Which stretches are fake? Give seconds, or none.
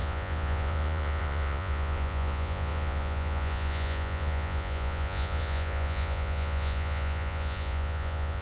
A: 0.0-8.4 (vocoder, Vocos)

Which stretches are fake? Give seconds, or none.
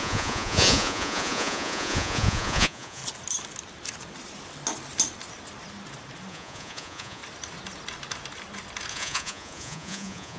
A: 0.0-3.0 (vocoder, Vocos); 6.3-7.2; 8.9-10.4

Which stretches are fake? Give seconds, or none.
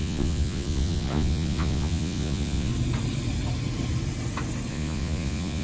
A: 0.0-2.7 (vocoder, Vocos); 4.7-5.6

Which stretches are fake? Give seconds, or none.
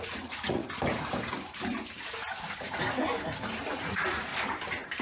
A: 0.0-0.6 (vocoder, Vocos); 3.6-4.3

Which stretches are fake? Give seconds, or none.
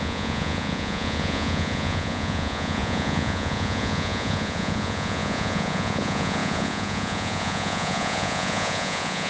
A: 0.0-9.3 (vocoder, Vocos)